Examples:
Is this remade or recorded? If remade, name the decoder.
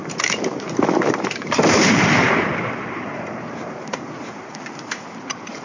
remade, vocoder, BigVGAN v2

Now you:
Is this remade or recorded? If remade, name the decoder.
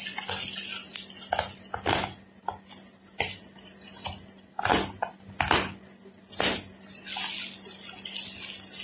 recorded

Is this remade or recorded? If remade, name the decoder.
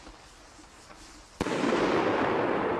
recorded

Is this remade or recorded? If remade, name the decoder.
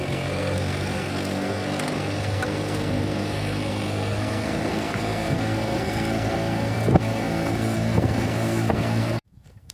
remade, codec, SNAC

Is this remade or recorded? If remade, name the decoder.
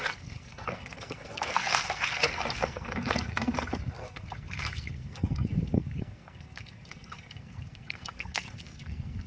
remade, codec, SNAC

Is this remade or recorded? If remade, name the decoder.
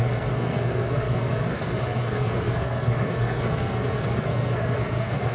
remade, codec, SNAC